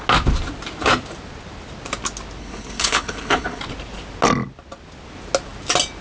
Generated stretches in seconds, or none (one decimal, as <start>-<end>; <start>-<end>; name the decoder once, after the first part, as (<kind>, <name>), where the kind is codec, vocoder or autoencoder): 2.4-3.6 (codec, HILCodec)